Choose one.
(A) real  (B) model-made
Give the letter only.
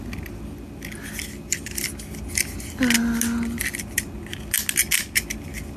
A